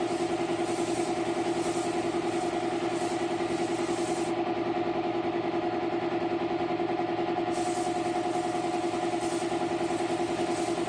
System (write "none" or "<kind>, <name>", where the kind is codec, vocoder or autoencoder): none